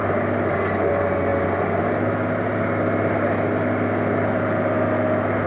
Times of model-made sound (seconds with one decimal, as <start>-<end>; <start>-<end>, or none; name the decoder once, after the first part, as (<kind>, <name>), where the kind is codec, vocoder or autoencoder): none